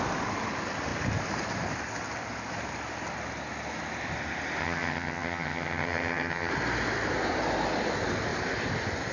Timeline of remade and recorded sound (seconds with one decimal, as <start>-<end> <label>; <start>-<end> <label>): 0.0-4.6 recorded; 4.6-6.5 remade; 6.5-9.1 recorded